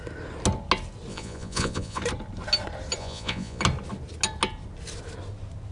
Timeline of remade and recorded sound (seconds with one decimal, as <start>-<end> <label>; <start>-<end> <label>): 0.0-1.1 recorded; 1.1-2.0 remade; 2.0-3.0 recorded; 3.0-3.6 remade; 3.6-5.7 recorded